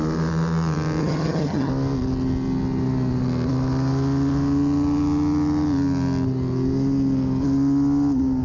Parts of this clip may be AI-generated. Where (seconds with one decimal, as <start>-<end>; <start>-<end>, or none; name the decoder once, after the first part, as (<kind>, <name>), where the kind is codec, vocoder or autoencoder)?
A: 1.0-1.7 (vocoder, HiFi-GAN)